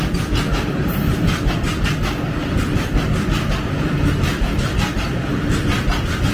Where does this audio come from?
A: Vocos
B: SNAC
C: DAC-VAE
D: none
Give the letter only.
D